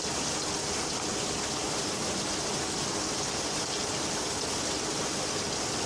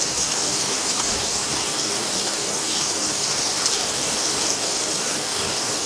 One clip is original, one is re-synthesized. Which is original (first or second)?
first